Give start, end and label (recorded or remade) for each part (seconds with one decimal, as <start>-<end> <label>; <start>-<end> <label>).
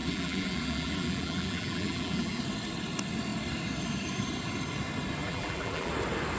0.0-2.4 remade; 2.4-5.2 recorded; 5.2-5.9 remade; 5.9-6.4 recorded